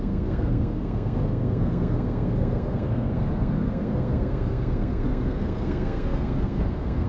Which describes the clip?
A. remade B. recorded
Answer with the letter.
A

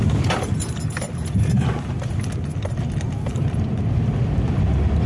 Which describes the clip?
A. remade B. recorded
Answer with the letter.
B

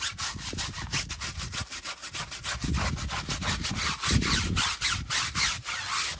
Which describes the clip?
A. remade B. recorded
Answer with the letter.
B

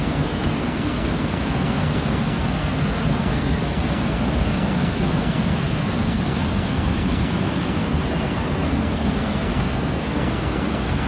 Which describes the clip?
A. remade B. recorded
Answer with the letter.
A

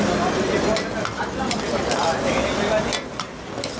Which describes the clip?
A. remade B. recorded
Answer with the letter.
B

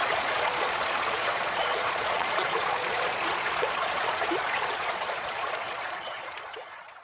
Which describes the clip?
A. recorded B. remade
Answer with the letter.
B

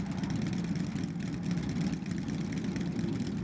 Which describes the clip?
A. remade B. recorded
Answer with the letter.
B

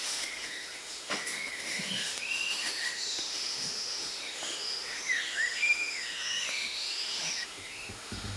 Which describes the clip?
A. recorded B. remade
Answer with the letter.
B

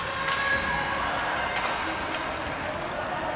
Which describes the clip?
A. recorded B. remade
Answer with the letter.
A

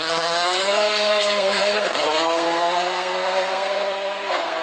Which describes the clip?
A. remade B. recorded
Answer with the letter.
A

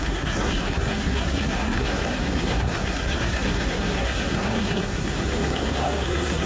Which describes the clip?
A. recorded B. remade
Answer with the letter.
B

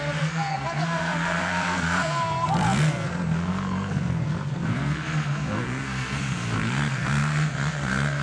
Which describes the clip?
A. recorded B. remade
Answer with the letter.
B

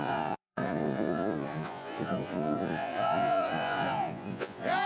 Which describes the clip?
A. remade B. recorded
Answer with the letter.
A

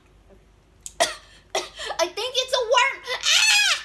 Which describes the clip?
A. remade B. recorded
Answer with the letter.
B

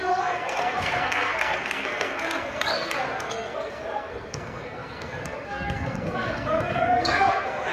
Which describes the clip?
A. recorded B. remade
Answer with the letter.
B